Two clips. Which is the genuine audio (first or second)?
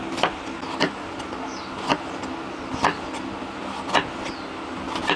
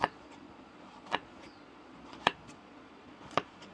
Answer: first